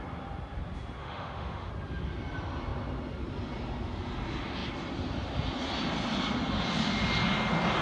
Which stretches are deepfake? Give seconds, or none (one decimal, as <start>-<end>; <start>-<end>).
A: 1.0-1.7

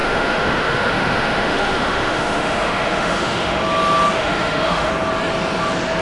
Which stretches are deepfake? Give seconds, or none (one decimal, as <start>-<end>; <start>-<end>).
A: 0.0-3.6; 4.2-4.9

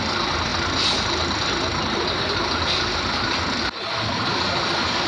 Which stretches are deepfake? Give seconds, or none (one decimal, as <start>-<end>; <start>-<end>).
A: none

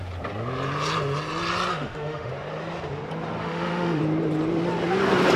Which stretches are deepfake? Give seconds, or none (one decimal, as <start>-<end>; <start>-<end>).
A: 1.7-2.3; 3.4-4.0

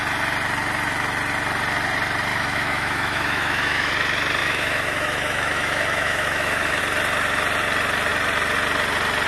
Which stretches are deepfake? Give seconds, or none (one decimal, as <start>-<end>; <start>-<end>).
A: 2.3-3.9; 4.4-6.8